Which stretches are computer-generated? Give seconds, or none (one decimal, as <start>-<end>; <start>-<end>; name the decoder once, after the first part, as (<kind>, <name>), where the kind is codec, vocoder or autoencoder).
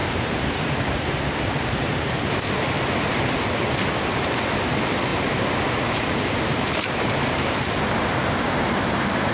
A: 0.0-2.3 (vocoder, BigVGAN v2); 5.1-9.3